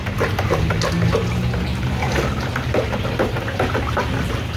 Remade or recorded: recorded